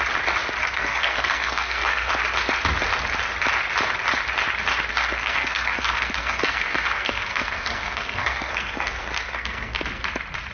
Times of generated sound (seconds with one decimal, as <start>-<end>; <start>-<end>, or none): 0.6-2.1; 4.9-10.1